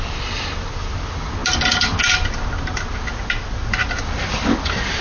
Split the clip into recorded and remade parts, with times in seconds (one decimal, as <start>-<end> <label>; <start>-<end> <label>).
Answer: 0.0-5.0 recorded